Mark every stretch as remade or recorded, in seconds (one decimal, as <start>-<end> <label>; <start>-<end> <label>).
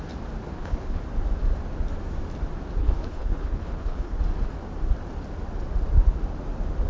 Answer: 0.0-0.4 recorded; 0.4-1.0 remade; 1.0-2.8 recorded; 2.8-4.2 remade; 4.2-6.9 recorded